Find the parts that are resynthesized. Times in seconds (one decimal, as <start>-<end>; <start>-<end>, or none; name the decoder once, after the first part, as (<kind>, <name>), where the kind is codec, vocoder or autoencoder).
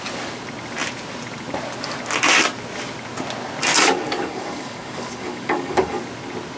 3.7-6.0 (codec, DAC)